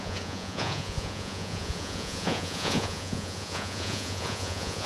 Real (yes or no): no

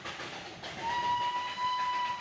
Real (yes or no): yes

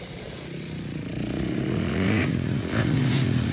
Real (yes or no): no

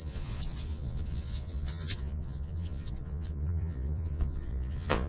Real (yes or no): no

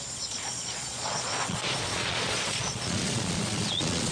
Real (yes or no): no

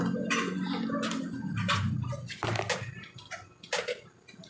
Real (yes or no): yes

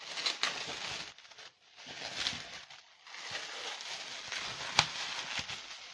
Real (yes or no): yes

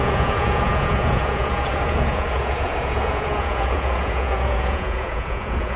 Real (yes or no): no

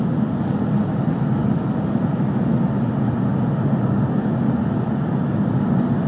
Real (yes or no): yes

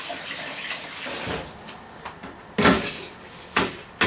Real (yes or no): yes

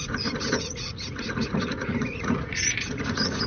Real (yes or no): no